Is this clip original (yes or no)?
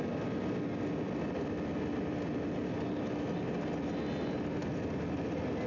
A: yes